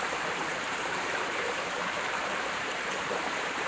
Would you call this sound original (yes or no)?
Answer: no